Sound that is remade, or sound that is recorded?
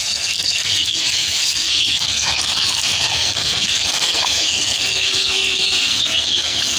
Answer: remade